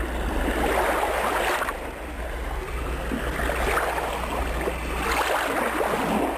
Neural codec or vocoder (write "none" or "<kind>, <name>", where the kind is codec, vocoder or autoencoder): none